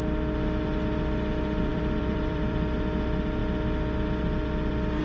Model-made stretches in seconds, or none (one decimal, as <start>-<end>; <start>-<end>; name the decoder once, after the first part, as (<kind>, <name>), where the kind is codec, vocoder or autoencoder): 1.7-2.7 (vocoder, BigVGAN v2)